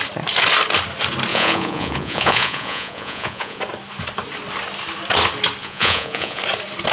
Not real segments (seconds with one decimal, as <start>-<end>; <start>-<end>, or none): 1.3-3.6; 5.6-6.4